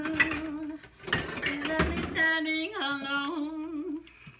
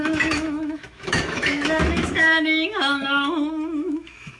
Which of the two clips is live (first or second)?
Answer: first